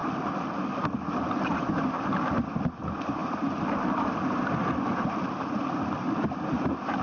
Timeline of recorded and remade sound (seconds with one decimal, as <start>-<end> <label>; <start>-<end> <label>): 0.0-7.0 recorded